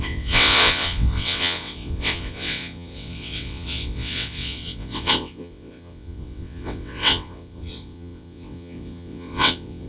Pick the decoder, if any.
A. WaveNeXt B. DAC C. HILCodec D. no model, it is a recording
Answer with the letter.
A